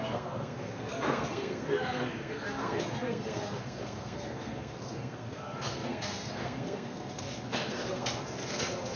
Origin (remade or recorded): remade